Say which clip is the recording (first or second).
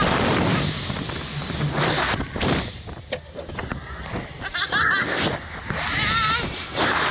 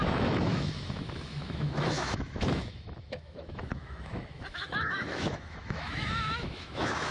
first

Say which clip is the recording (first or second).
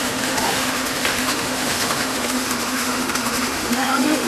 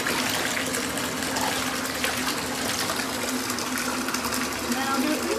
second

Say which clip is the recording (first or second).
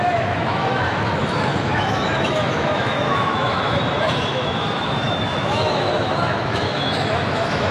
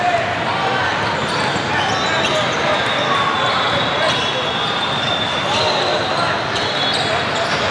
second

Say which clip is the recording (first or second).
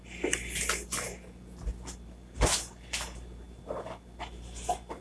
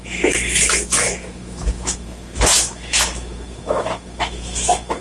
first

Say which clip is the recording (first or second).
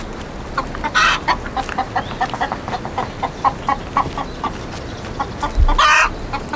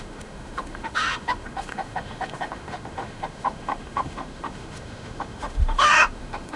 first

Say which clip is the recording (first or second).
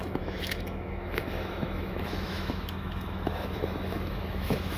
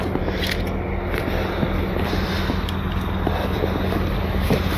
second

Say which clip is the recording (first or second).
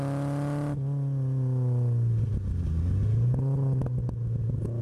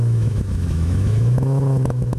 first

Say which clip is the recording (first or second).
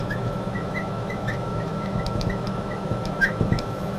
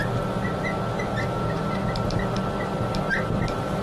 second